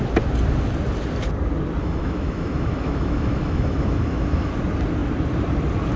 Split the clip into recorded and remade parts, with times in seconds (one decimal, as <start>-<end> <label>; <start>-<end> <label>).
0.0-1.8 recorded; 1.8-4.5 remade; 4.5-6.0 recorded